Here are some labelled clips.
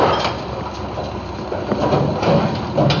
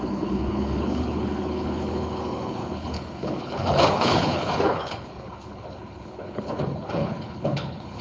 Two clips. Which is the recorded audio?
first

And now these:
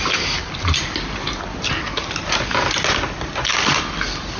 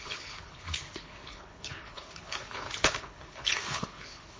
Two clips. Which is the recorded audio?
first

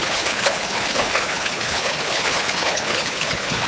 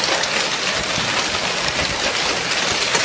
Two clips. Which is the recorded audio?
second